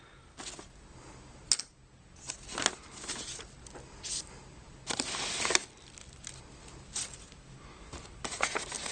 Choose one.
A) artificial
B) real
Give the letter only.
B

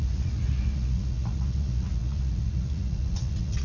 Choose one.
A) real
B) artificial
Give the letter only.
B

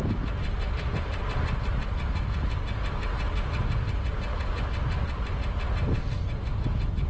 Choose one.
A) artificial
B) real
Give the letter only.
B